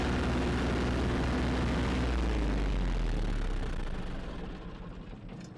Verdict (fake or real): real